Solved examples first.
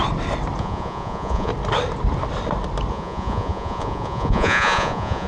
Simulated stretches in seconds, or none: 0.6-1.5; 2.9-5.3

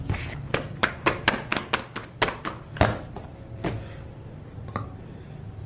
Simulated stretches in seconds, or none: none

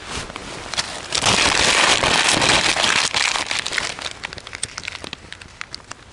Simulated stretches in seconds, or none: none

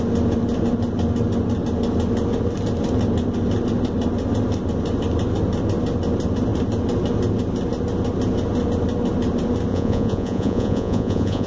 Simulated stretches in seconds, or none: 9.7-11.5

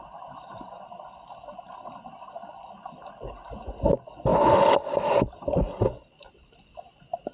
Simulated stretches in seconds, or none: none

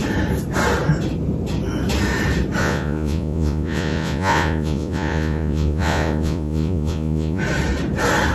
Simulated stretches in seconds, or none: 2.6-7.4